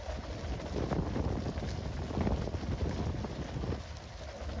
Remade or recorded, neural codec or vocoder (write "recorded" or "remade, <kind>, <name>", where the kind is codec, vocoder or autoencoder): recorded